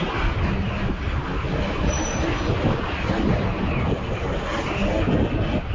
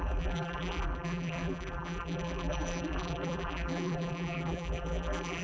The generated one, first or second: second